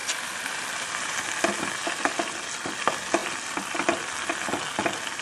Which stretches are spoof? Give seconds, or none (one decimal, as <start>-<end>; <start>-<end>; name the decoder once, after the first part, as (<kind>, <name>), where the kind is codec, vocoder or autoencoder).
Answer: 0.0-1.4 (vocoder, BigVGAN v2); 3.2-4.1